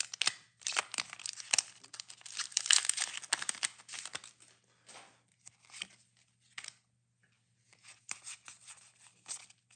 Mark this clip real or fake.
real